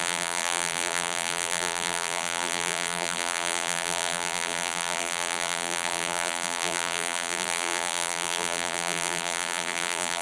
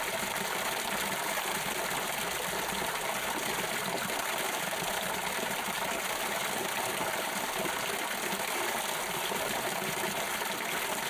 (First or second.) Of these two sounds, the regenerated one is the first